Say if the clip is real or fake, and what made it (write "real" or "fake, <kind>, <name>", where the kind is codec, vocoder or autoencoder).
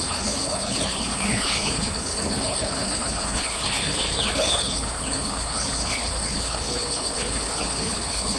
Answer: fake, codec, HILCodec